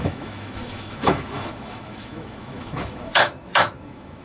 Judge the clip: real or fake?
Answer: fake